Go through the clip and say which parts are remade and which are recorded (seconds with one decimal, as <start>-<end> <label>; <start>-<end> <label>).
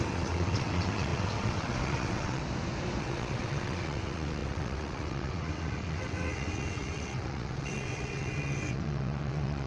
0.0-2.4 remade; 2.4-3.0 recorded; 3.0-9.7 remade